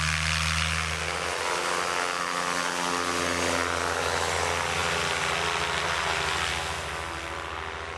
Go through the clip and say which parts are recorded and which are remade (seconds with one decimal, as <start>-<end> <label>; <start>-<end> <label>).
0.0-8.0 recorded